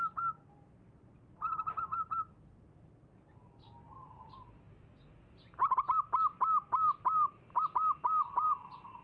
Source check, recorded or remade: recorded